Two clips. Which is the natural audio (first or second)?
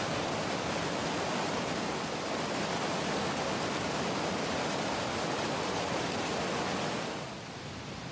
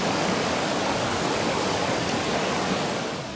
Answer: first